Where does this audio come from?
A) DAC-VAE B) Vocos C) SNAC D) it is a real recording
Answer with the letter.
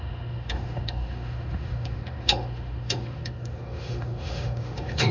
A